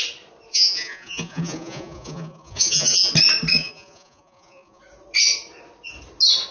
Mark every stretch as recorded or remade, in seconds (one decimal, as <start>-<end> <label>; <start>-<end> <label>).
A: 0.0-0.5 recorded; 0.5-3.1 remade; 3.1-3.5 recorded; 3.5-4.8 remade; 4.8-6.5 recorded

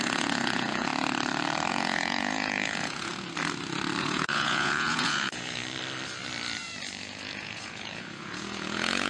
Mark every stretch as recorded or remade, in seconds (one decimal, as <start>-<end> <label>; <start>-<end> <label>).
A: 0.0-0.9 remade; 0.9-1.7 recorded; 1.7-3.1 remade; 3.1-4.0 recorded; 4.0-5.6 remade; 5.6-7.0 recorded; 7.0-9.1 remade

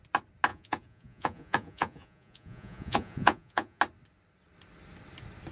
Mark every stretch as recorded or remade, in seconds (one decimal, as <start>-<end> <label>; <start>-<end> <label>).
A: 0.0-0.5 recorded; 0.5-3.8 remade; 3.8-5.5 recorded

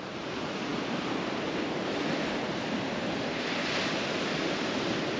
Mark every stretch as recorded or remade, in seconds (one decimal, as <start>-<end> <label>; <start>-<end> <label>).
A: 0.0-5.2 recorded

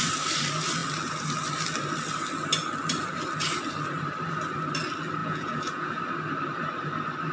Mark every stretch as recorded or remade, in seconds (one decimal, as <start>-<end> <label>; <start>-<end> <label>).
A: 0.0-5.2 recorded; 5.2-6.0 remade; 6.0-7.3 recorded

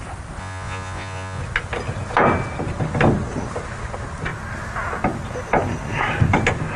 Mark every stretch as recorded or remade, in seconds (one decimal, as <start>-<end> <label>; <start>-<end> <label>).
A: 0.0-0.4 recorded; 0.4-1.4 remade; 1.4-6.8 recorded